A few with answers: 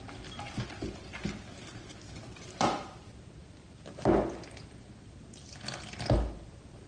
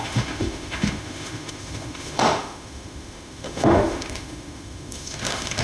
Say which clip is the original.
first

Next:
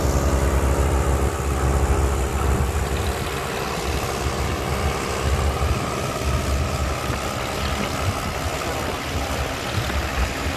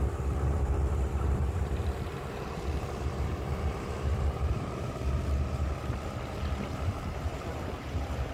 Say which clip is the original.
first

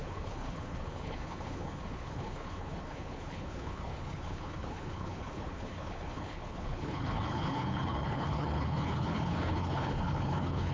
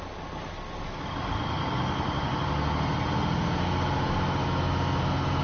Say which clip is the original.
second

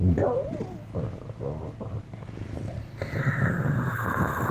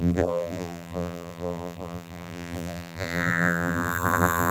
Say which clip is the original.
first